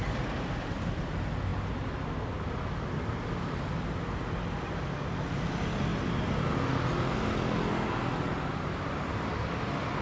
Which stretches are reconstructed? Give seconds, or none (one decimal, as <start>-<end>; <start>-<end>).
none